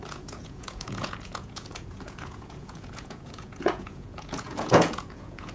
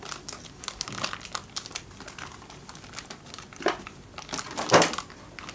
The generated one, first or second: first